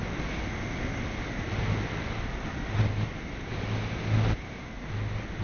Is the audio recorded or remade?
recorded